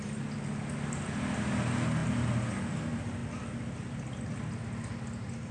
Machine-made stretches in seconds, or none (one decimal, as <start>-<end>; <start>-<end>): none